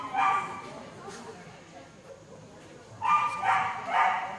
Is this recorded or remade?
recorded